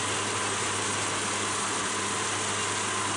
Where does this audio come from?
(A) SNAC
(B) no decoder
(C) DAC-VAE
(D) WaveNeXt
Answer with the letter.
B